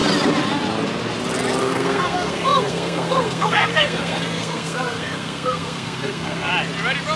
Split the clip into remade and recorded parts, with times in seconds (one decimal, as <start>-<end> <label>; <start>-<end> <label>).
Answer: 0.0-1.6 recorded; 1.6-6.5 remade; 6.5-7.2 recorded